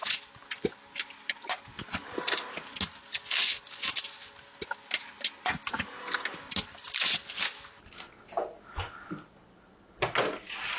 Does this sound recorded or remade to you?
recorded